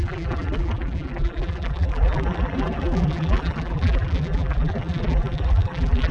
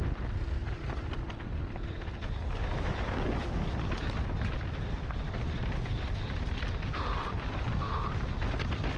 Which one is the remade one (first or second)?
first